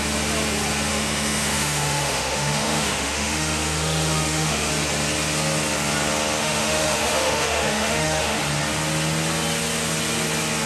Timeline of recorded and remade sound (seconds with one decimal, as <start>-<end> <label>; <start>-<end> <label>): 0.0-0.9 recorded; 0.9-4.7 remade; 4.7-6.4 recorded; 6.4-8.4 remade; 8.4-10.7 recorded